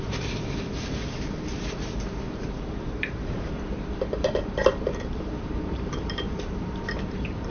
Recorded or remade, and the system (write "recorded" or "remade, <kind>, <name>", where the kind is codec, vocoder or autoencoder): remade, vocoder, BigVGAN v2